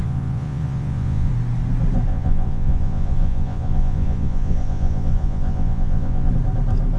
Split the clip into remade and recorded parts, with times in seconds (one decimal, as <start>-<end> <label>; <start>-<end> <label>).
0.0-1.3 remade; 1.3-2.1 recorded; 2.1-6.3 remade; 6.3-7.0 recorded